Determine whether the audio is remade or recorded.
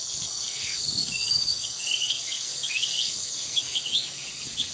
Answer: remade